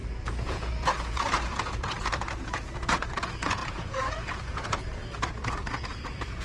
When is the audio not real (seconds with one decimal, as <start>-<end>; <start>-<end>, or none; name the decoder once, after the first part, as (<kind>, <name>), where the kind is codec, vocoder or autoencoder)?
0.0-6.4 (vocoder, Vocos)